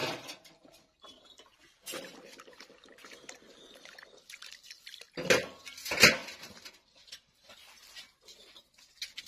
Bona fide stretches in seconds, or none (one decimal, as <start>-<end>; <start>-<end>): 2.9-6.2; 7.6-9.3